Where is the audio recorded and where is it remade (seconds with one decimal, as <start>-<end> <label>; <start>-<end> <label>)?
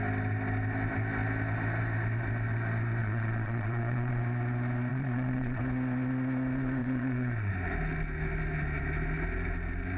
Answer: 0.0-3.0 recorded; 3.0-4.2 remade; 4.2-4.9 recorded; 4.9-5.6 remade; 5.6-6.8 recorded; 6.8-7.5 remade; 7.5-10.0 recorded